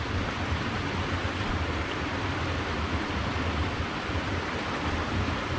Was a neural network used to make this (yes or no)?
no